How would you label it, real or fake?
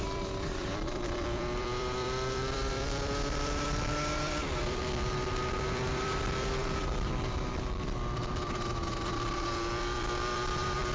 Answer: fake